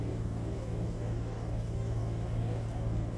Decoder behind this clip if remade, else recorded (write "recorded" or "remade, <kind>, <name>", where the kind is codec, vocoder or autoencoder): remade, codec, DAC